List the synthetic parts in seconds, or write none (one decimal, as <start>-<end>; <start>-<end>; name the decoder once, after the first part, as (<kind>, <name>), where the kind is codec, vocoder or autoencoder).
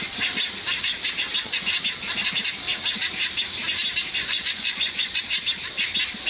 4.2-5.2 (vocoder, Vocos)